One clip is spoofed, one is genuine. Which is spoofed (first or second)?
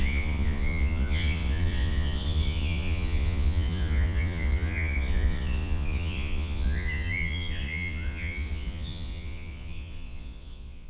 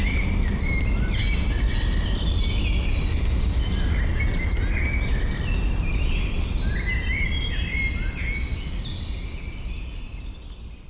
first